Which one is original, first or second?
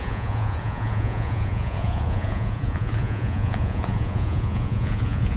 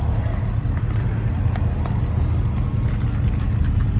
second